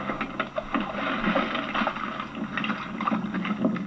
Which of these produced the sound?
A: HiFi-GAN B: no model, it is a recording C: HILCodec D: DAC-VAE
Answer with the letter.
B